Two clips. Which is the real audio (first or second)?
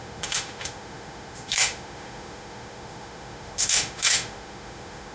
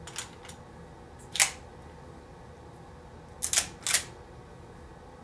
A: second